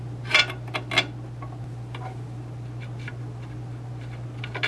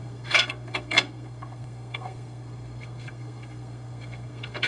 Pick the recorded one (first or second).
first